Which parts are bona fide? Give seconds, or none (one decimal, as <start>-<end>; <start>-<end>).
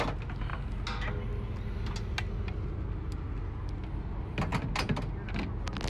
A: 0.0-5.9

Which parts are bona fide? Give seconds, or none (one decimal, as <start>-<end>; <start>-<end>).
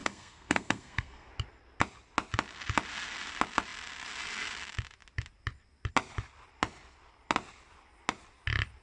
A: 1.3-8.8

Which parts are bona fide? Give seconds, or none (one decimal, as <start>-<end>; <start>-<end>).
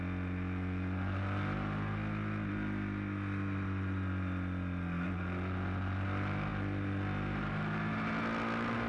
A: 0.0-8.9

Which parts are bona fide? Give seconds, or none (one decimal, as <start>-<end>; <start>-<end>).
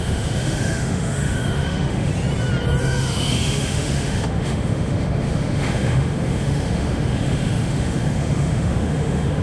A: 2.1-2.8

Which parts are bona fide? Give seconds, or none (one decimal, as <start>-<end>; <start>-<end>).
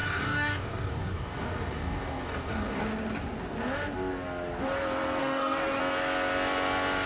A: 2.8-5.2; 5.8-7.1